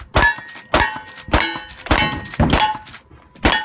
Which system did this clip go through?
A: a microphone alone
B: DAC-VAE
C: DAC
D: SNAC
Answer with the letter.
A